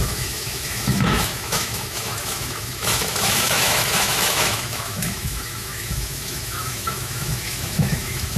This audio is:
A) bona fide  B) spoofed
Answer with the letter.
B